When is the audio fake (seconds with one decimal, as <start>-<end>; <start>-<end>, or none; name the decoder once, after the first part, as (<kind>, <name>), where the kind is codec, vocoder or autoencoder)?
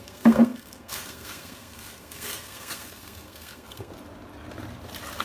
0.0-3.9 (codec, SNAC)